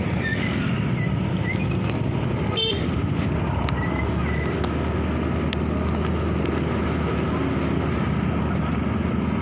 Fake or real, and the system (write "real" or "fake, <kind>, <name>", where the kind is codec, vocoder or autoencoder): real